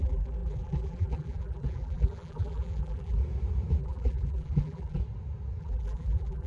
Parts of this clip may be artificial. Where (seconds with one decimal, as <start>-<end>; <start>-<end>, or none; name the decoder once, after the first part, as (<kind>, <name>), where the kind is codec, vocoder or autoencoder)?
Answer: 0.0-3.2 (vocoder, BigVGAN v2); 3.8-5.0; 5.6-6.5